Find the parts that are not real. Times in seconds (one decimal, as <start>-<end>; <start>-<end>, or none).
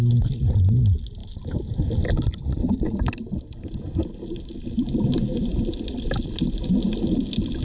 none